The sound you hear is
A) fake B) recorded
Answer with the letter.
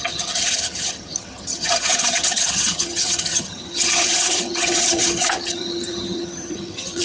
A